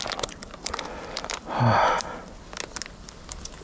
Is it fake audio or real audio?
real